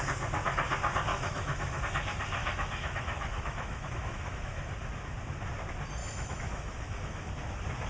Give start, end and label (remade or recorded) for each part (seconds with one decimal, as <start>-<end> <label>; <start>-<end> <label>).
0.0-1.1 recorded; 1.1-1.8 remade; 1.8-2.4 recorded; 2.4-4.9 remade; 4.9-6.0 recorded; 6.0-7.3 remade; 7.3-7.9 recorded